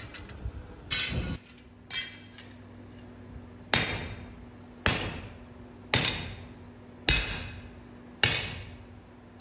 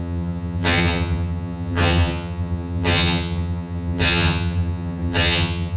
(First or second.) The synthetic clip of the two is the second